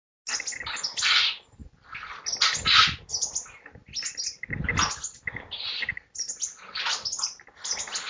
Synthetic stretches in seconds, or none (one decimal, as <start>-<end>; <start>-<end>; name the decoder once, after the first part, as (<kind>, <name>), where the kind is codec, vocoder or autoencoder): none